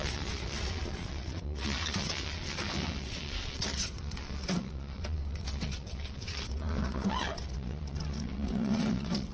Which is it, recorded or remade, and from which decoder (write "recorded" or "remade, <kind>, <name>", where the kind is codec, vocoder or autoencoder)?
remade, vocoder, WaveNeXt